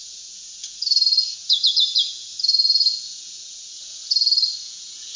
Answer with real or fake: fake